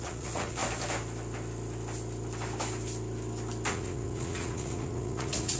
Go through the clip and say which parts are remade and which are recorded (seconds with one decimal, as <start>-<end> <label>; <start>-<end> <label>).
0.0-0.6 remade; 0.6-3.7 recorded; 3.7-5.6 remade